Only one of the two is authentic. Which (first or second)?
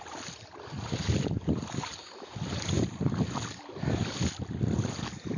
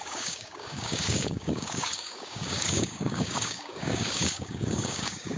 first